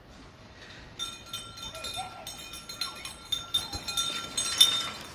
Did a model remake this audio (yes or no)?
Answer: no